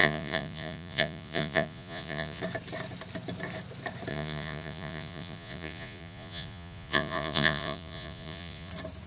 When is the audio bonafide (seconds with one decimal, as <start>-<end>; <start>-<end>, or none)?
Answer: 2.4-4.1; 8.7-9.1